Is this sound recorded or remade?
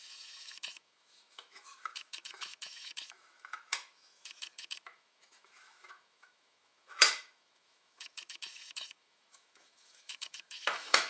remade